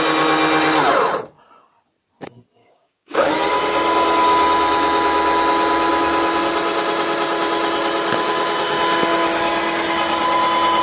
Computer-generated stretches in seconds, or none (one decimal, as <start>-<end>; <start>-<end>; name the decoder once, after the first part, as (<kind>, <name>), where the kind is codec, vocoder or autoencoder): 2.6-3.3 (codec, DAC)